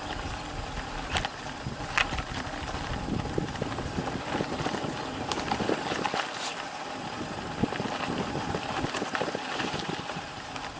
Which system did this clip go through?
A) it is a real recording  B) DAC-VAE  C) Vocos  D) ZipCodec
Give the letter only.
A